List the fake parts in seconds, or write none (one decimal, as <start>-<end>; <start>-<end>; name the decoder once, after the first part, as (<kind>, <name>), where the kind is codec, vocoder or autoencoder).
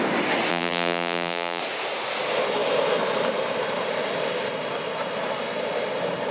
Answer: 0.5-1.6 (vocoder, BigVGAN v2)